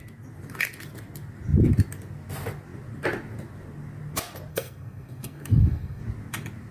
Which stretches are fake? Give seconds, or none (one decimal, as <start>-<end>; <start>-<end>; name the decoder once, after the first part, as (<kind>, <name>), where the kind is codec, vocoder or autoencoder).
4.5-6.0 (codec, SNAC)